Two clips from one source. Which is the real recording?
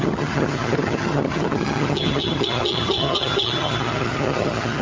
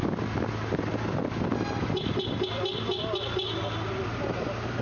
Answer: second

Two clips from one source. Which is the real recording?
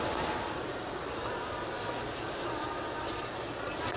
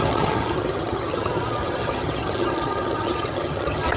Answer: first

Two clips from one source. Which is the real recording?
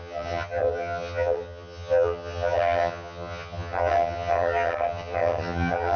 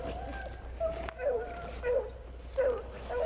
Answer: second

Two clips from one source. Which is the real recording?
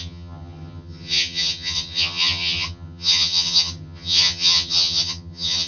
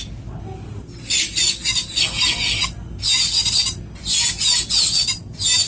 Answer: second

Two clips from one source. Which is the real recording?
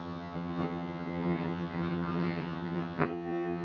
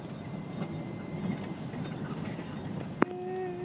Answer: second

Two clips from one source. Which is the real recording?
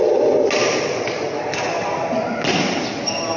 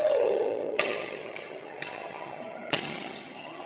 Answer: first